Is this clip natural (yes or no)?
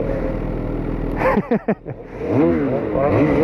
yes